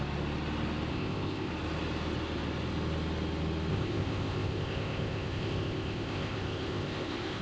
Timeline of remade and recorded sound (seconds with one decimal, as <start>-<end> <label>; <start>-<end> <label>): 0.0-0.9 recorded; 0.9-1.5 remade; 1.5-3.7 recorded; 3.7-7.4 remade